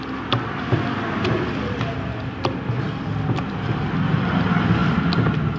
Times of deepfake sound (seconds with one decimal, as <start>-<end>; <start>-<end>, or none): none